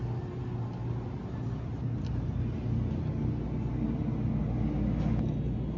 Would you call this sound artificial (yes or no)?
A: no